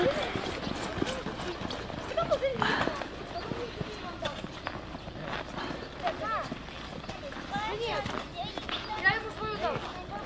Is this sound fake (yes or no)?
no